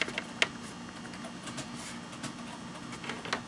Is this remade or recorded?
recorded